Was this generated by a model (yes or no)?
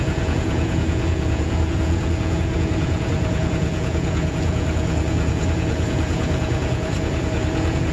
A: yes